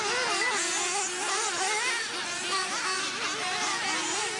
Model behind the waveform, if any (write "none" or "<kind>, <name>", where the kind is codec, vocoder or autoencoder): none